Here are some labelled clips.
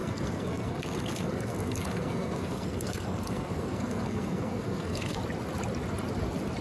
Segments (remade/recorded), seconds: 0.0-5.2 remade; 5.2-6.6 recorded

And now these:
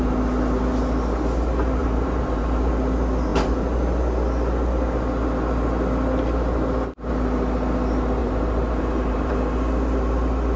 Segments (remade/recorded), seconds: 0.0-1.8 recorded; 1.8-2.7 remade; 2.7-8.2 recorded; 8.2-9.3 remade; 9.3-10.6 recorded